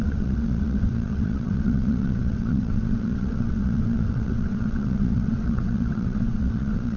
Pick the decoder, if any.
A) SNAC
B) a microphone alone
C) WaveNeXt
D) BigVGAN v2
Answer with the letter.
C